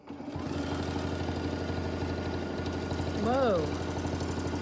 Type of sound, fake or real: real